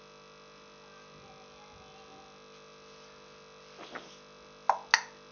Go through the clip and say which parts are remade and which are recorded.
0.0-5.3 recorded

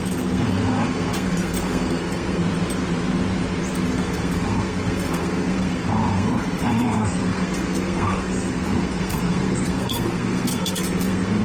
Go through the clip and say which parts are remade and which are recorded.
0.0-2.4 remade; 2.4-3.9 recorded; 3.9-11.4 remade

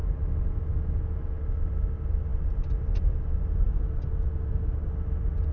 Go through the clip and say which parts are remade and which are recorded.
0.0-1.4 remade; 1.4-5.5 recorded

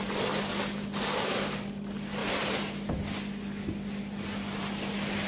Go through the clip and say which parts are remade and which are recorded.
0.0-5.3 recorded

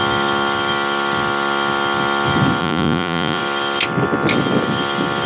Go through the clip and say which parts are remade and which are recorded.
0.0-2.6 recorded; 2.6-3.4 remade; 3.4-5.3 recorded